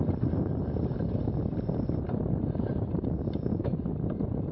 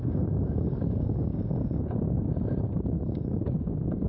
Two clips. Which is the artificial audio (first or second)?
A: second